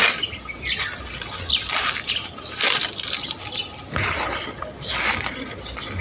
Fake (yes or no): no